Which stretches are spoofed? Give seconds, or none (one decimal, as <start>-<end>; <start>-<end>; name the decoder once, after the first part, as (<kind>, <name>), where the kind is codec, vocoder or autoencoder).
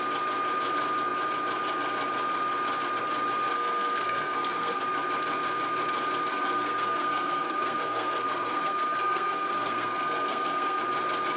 3.5-4.8 (codec, SNAC); 6.3-10.8